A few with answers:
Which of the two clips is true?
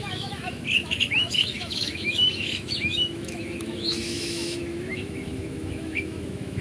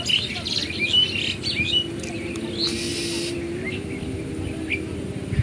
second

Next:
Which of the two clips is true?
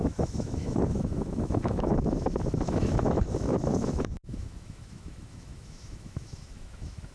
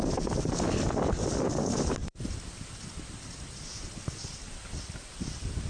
second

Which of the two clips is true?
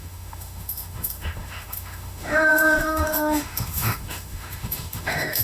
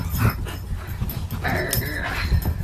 second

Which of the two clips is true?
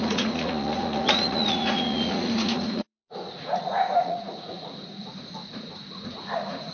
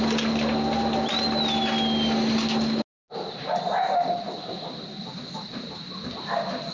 second